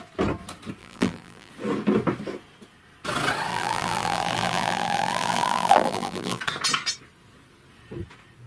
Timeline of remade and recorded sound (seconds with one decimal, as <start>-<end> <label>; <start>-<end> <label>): 0.0-0.8 recorded; 0.8-1.5 remade; 1.5-3.5 recorded; 3.5-6.4 remade; 6.4-8.5 recorded